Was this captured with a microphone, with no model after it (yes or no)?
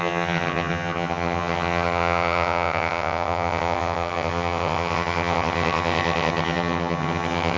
no